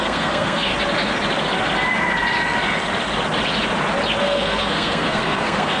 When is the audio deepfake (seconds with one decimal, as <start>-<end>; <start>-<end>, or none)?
0.0-0.7; 4.2-5.8